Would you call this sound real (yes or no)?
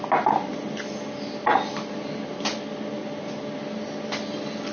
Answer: yes